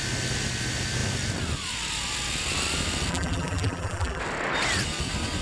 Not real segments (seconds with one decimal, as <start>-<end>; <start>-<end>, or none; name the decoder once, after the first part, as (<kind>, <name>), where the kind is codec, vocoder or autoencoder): 3.1-4.2 (vocoder, BigVGAN v2)